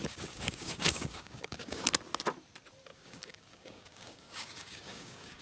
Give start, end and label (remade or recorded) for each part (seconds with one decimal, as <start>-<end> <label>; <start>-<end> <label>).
0.0-1.8 remade; 1.8-2.9 recorded; 2.9-5.4 remade